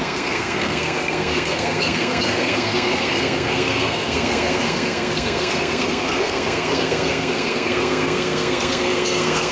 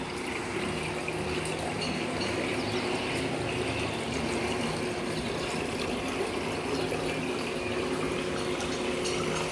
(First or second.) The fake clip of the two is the first